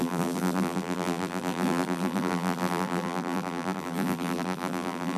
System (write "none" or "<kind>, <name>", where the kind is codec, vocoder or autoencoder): vocoder, BigVGAN v2